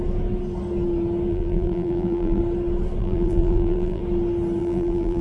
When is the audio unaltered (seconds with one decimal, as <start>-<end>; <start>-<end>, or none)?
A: 0.0-1.3; 2.4-3.0; 4.0-4.6